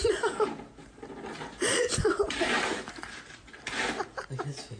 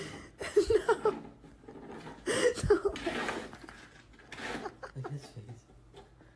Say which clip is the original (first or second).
second